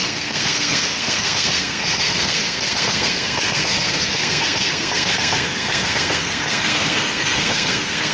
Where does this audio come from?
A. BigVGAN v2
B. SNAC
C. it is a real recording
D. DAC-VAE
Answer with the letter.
B